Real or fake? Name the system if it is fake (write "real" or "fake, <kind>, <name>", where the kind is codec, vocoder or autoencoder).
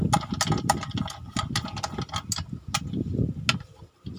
real